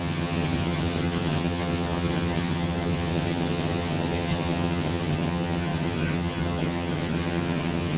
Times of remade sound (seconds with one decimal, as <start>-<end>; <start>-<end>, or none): 0.0-8.0

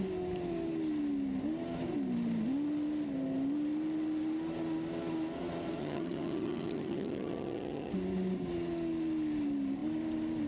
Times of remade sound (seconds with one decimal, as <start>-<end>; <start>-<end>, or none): 5.8-7.9

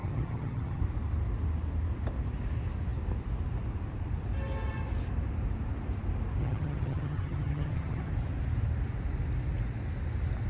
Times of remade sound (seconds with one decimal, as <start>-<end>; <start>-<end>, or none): 0.0-0.8; 6.4-8.1

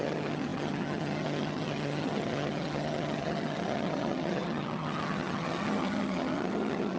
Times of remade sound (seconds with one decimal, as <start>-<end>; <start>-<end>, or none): 0.0-7.0

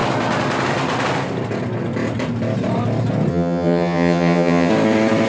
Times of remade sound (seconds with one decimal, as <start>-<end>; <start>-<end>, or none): 3.3-4.7

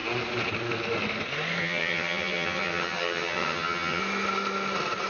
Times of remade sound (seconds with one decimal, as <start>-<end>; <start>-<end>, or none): 1.6-4.0

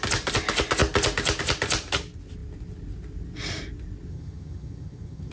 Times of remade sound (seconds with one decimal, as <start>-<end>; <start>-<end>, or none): 4.1-5.3

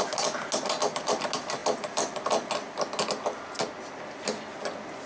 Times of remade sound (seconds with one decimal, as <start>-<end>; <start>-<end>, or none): none